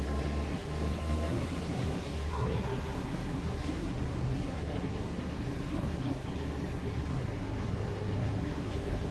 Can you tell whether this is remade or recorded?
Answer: remade